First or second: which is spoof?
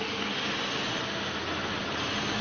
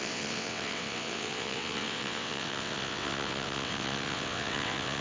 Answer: second